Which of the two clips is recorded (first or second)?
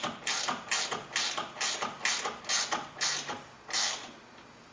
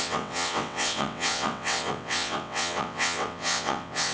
first